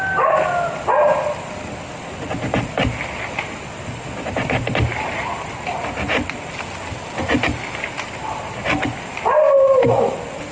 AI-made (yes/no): no